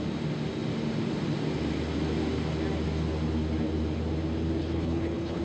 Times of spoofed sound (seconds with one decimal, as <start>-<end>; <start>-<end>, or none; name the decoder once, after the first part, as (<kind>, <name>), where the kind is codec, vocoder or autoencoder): 4.6-5.4 (codec, HILCodec)